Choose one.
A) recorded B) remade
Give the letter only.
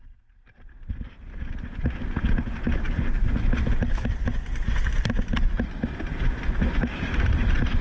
A